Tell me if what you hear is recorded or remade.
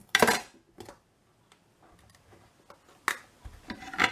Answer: recorded